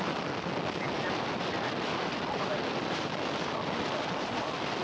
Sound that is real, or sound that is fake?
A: real